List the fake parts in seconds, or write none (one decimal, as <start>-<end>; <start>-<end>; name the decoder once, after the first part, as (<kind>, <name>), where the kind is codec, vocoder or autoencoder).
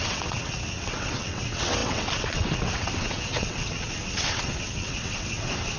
0.0-5.8 (vocoder, WaveNeXt)